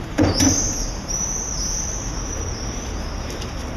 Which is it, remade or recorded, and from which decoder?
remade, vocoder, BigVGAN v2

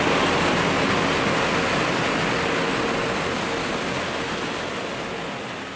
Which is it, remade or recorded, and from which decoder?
recorded